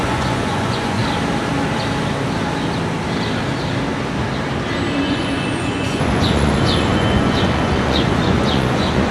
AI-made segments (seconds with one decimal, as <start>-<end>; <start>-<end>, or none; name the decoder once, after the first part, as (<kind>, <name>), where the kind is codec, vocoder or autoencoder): 0.0-1.0 (vocoder, Vocos); 5.0-9.1